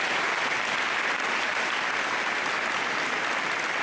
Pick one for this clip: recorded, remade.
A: recorded